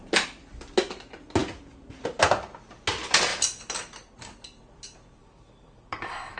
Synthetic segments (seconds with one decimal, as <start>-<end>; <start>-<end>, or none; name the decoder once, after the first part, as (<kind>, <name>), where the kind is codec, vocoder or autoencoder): 5.2-6.4 (codec, DAC)